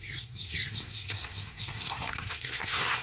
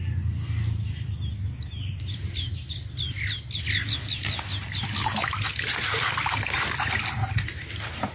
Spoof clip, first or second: first